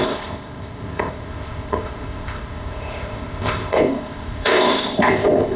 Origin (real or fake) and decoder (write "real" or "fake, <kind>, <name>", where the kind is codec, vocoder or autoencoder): fake, codec, ZipCodec